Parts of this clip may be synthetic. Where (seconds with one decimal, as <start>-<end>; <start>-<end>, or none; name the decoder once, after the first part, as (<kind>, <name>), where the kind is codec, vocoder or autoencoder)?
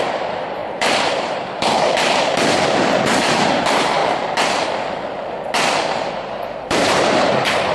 0.0-4.0 (vocoder, BigVGAN v2); 6.0-7.7